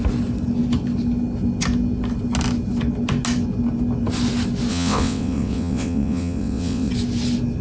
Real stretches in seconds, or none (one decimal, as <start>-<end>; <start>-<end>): 0.0-4.7; 6.9-7.6